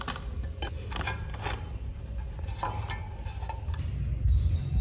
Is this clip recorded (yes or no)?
yes